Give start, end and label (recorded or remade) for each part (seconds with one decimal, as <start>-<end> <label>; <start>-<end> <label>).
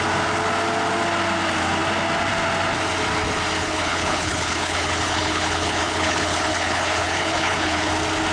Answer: 0.0-3.6 recorded; 3.6-7.9 remade; 7.9-8.3 recorded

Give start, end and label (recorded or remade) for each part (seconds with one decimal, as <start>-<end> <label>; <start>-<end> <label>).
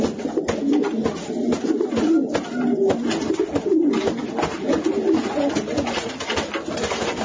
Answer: 0.0-7.2 recorded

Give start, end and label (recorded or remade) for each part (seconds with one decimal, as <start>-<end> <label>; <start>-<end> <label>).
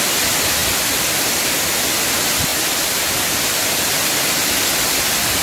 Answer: 0.0-5.4 recorded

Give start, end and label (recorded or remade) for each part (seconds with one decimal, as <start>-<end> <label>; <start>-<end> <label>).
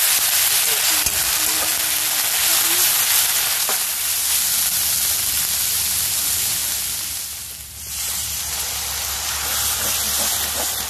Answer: 0.0-10.9 recorded